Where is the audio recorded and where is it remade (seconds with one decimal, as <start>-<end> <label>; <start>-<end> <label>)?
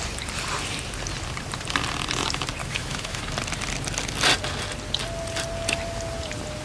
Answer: 0.0-2.6 recorded; 2.6-3.2 remade; 3.2-6.6 recorded